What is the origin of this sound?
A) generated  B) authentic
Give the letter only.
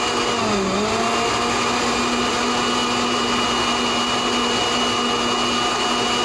B